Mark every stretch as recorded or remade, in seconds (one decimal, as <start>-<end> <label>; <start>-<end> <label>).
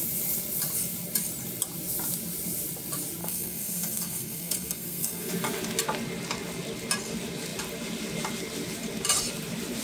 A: 0.0-3.2 recorded; 3.2-5.3 remade; 5.3-9.8 recorded